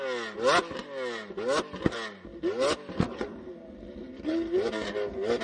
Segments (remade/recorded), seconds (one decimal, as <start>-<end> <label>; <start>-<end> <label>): 0.0-5.4 recorded